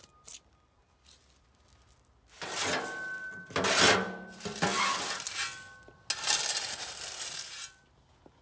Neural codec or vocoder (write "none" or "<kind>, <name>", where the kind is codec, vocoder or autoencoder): none